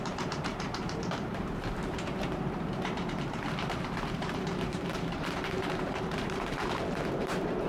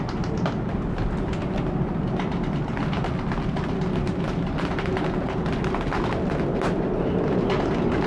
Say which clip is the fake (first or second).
first